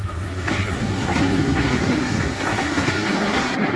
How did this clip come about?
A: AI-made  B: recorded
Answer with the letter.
A